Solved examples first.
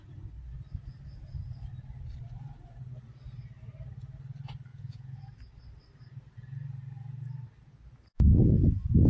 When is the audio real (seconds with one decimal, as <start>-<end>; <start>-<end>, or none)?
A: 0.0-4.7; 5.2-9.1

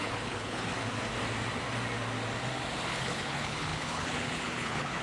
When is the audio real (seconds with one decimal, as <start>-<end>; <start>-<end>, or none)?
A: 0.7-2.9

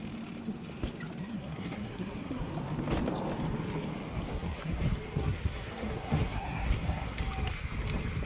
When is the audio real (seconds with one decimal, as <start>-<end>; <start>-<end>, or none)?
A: 0.0-1.2; 2.5-4.3; 4.8-5.2; 7.2-8.3

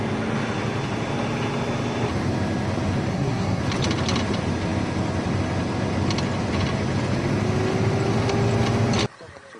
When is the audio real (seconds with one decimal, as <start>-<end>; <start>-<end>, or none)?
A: 0.0-3.1; 3.6-9.6

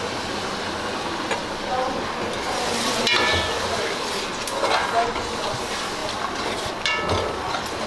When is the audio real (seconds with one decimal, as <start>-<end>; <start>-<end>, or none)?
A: 0.0-7.9

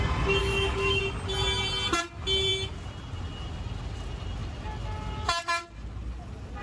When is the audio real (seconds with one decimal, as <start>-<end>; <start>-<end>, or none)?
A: 0.0-0.4; 1.0-6.6

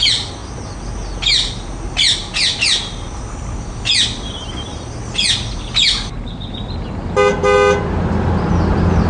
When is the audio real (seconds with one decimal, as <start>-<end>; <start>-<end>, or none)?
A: 0.0-9.1

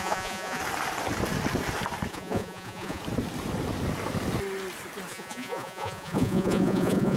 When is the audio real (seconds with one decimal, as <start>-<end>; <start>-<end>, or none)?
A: 0.6-2.1; 3.0-5.1